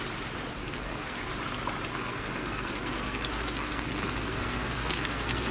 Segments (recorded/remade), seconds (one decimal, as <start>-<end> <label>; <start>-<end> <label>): 0.0-0.6 recorded; 0.6-1.3 remade; 1.3-1.9 recorded; 1.9-5.5 remade